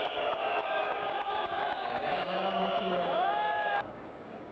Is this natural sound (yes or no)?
no